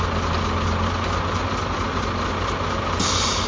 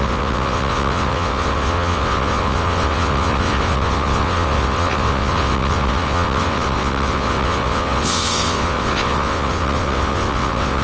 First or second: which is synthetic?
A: second